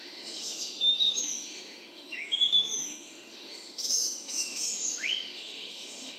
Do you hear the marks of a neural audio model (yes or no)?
yes